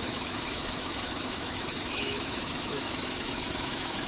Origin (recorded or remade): remade